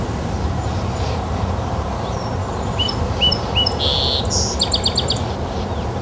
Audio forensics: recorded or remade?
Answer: recorded